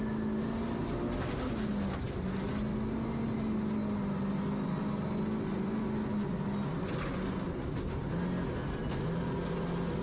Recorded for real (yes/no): yes